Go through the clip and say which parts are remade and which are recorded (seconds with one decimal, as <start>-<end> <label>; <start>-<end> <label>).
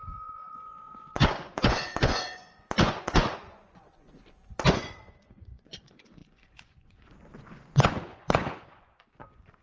0.0-9.6 remade